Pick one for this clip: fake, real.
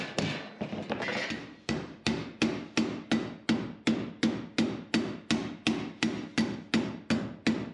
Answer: real